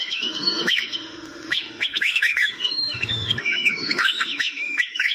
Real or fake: fake